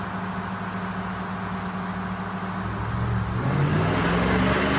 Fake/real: real